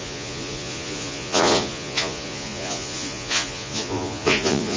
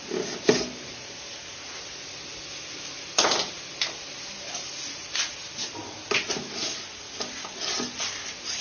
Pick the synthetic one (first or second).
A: first